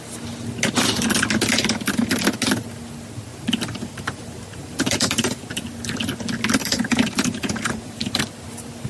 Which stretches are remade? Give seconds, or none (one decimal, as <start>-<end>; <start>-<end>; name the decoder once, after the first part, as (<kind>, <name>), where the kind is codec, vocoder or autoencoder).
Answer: 3.3-5.5 (vocoder, BigVGAN v2); 6.6-8.2